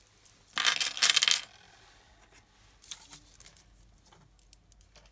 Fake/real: real